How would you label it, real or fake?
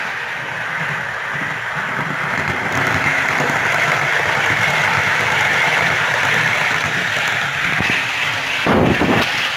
fake